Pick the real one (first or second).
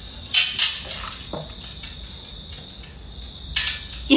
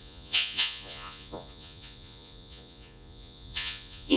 first